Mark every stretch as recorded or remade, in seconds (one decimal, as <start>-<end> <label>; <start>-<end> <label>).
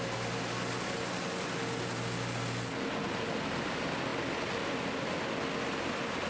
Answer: 0.0-6.3 recorded